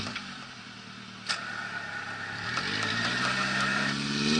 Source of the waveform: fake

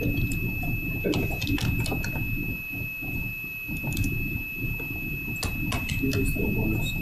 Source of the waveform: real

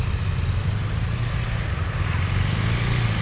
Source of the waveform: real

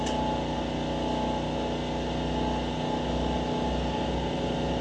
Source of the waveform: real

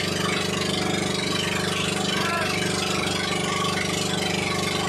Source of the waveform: real